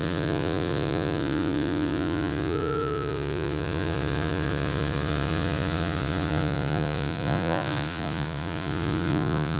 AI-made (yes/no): yes